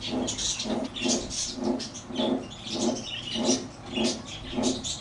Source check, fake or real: real